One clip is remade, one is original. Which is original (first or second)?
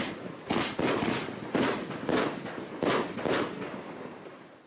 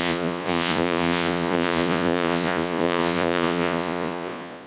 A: first